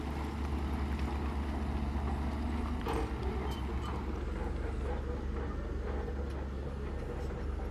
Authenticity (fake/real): real